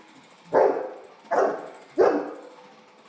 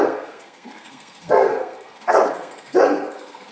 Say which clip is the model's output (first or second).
second